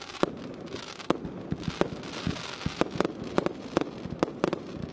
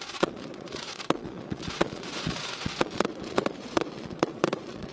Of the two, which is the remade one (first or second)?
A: second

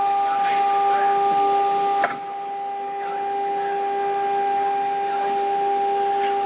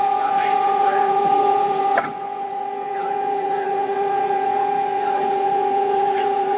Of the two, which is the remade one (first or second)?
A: second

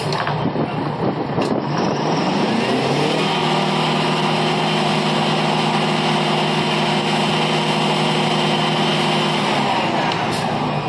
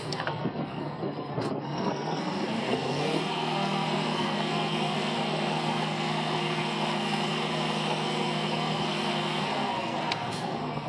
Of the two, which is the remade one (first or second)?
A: second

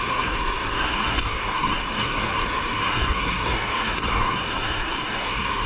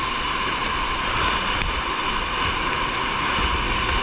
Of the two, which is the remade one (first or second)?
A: first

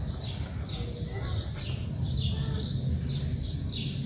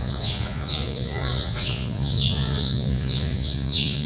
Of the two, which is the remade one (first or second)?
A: second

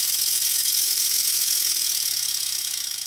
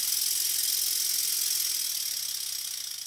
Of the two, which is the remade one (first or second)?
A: first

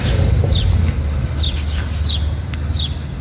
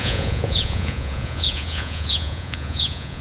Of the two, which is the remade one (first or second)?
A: second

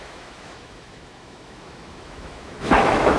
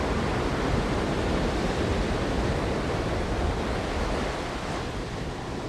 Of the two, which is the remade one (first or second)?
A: first